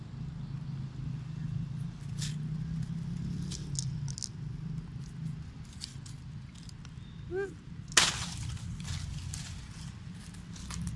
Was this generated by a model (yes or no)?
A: no